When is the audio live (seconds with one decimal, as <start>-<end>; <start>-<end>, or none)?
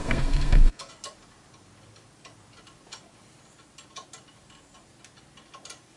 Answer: 0.9-6.0